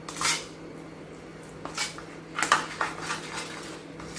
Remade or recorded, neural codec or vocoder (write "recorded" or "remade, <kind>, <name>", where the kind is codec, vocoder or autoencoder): recorded